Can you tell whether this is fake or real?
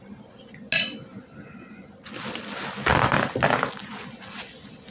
real